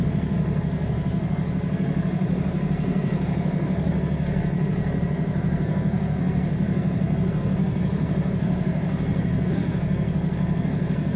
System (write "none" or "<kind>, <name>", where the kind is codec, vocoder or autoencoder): codec, SNAC